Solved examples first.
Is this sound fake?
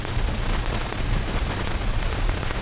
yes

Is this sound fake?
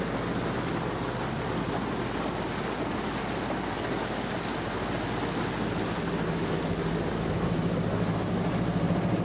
no